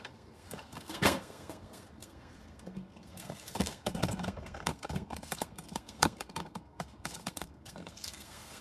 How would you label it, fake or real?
fake